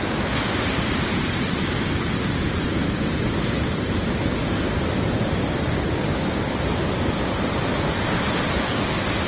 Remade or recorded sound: recorded